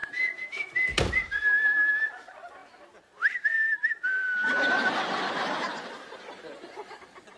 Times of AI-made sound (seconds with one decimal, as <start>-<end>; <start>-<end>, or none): none